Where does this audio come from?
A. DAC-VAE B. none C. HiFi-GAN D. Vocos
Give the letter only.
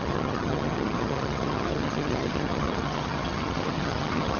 C